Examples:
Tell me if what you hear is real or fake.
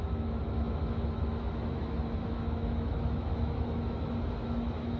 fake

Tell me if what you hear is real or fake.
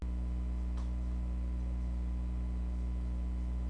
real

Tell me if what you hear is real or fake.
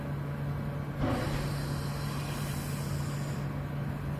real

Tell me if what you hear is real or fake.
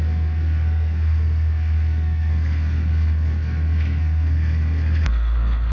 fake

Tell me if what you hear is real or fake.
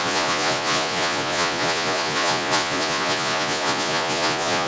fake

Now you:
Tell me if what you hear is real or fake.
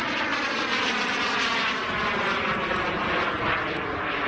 real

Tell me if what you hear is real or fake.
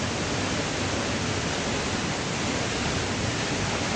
real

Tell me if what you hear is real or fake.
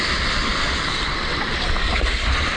real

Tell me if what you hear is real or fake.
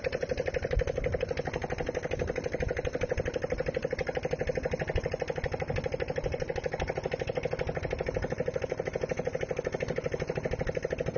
real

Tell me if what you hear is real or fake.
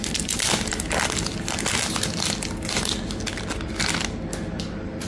real